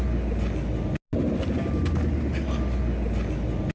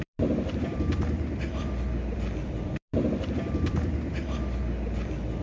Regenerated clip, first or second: second